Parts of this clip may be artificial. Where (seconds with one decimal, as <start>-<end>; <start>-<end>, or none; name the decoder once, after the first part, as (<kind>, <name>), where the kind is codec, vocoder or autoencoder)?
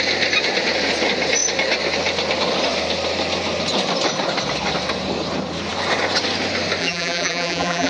6.8-7.9 (vocoder, BigVGAN v2)